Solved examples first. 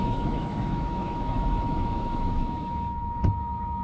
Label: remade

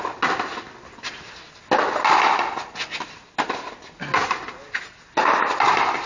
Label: recorded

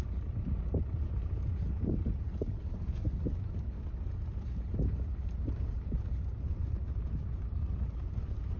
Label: recorded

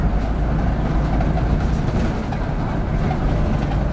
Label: recorded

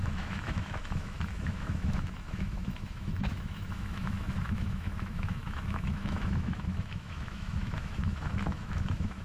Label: remade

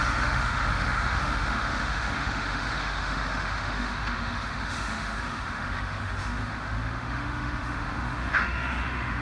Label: remade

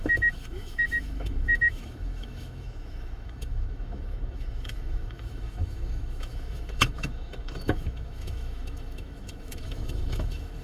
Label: remade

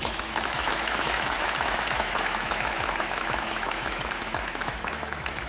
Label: remade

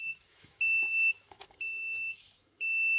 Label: remade